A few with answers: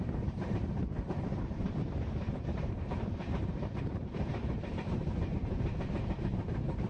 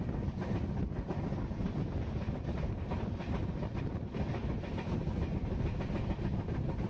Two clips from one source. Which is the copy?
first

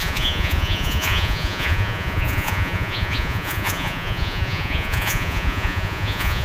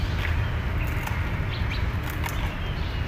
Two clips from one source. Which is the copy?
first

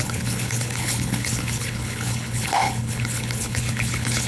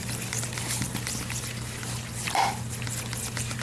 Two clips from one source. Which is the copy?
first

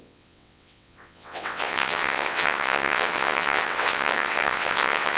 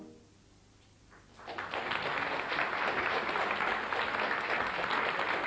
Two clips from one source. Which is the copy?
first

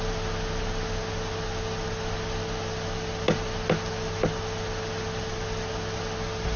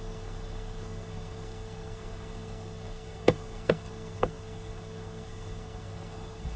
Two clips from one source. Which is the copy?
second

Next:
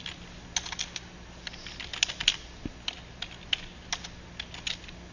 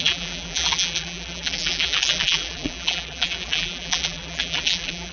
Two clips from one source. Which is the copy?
second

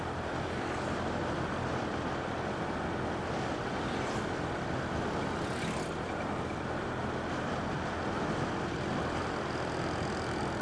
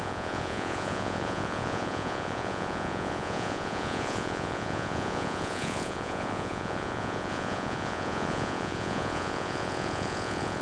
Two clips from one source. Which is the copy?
second